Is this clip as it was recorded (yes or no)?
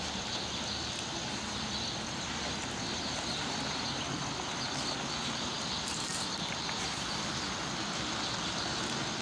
yes